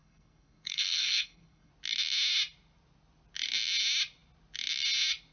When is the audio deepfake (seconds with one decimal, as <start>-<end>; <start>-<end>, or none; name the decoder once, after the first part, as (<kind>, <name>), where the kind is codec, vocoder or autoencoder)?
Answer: 0.0-1.7 (codec, SNAC)

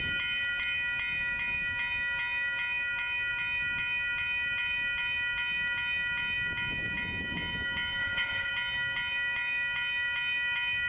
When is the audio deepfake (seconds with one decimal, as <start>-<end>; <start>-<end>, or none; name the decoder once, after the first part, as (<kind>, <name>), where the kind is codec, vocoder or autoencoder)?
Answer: 8.0-8.5 (vocoder, Vocos)

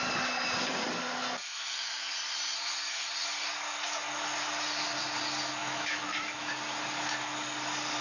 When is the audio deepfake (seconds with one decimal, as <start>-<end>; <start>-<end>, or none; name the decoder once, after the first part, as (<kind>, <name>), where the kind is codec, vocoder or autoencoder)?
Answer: 1.4-2.1 (autoencoder, DAC-VAE); 5.6-6.5

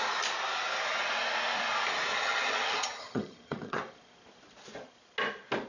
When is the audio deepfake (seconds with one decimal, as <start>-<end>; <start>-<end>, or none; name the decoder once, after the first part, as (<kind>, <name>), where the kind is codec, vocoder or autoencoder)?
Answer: 2.2-3.8 (vocoder, HiFi-GAN)

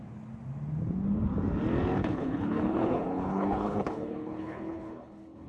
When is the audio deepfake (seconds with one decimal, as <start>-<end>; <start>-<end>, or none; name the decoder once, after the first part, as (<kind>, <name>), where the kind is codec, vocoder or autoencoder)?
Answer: 2.0-5.5 (codec, HILCodec)

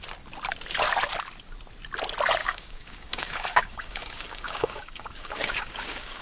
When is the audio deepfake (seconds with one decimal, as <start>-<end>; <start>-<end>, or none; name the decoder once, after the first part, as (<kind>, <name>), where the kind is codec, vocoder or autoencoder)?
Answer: 2.4-6.2 (codec, DAC)

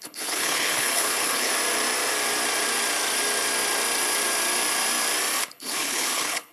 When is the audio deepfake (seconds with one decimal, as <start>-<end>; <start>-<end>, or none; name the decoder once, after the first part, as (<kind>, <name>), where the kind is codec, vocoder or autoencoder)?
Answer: 0.0-1.5 (codec, HILCodec); 5.4-6.5